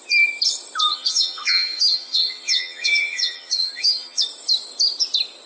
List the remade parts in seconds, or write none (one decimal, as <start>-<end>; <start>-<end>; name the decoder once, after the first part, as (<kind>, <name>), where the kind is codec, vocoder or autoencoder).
0.9-4.2 (vocoder, HiFi-GAN)